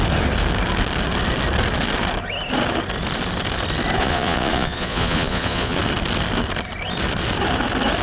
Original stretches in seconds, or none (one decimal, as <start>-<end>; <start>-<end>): 0.0-4.0; 5.8-8.0